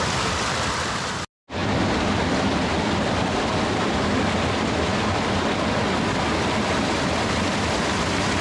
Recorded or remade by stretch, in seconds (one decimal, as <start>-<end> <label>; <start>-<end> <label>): 0.0-8.4 recorded